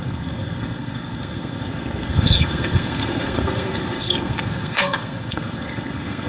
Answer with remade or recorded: remade